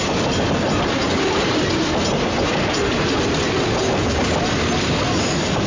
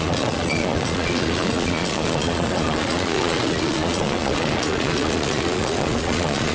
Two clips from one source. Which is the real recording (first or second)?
first